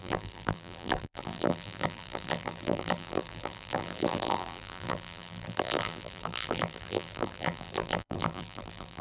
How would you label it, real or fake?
fake